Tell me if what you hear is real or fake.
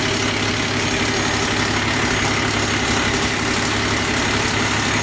real